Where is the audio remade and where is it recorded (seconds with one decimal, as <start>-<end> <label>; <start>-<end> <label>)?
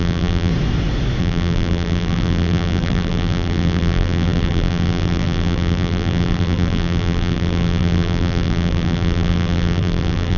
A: 0.0-0.5 remade; 0.5-1.2 recorded; 1.2-10.4 remade